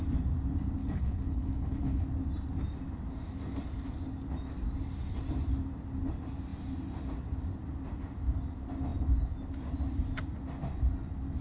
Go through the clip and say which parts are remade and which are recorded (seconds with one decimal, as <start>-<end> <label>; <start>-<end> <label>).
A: 0.0-0.8 recorded; 0.8-2.0 remade; 2.0-11.4 recorded